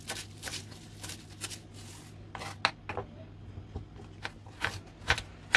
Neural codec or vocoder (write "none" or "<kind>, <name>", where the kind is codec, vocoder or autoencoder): none